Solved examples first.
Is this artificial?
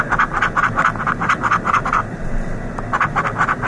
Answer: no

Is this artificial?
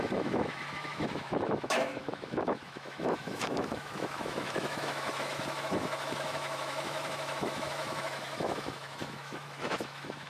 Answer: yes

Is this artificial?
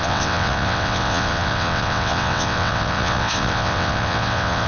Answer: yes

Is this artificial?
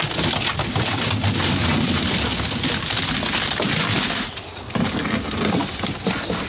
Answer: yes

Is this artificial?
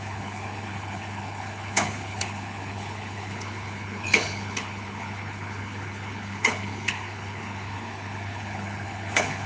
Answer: yes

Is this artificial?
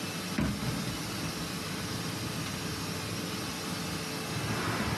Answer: no